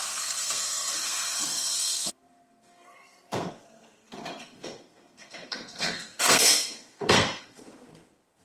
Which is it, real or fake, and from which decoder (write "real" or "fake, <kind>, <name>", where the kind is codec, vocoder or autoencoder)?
fake, codec, SNAC